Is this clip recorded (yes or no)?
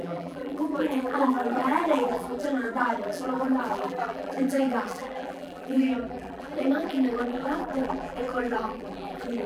no